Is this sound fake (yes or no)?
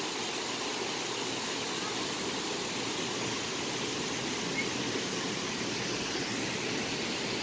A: no